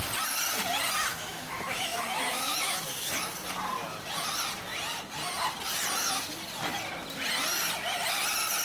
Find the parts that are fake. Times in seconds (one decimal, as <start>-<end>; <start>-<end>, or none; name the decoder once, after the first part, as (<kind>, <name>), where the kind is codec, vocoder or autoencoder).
1.1-3.1 (autoencoder, DAC-VAE)